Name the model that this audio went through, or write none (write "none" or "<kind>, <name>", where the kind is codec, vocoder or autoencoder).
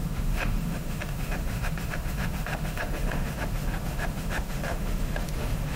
autoencoder, DAC-VAE